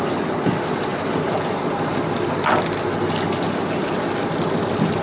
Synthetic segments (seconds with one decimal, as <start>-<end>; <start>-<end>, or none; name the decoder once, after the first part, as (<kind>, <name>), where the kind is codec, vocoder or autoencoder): none